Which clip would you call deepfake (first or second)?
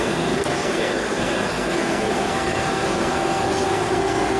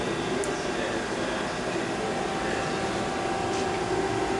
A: first